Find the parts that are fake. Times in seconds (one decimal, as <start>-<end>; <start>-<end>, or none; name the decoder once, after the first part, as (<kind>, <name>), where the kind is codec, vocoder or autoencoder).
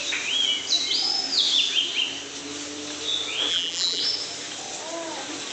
3.5-4.0 (vocoder, BigVGAN v2)